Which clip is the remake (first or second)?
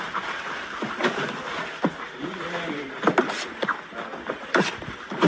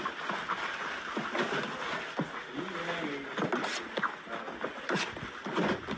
first